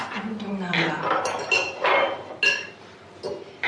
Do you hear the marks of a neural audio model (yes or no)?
yes